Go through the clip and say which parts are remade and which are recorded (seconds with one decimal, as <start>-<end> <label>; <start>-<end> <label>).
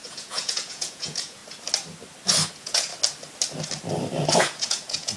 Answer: 0.0-1.4 remade; 1.4-2.5 recorded; 2.5-2.9 remade; 2.9-4.4 recorded; 4.4-5.2 remade